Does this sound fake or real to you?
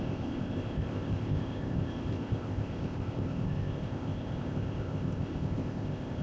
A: fake